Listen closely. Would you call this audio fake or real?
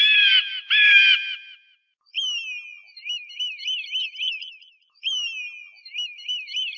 real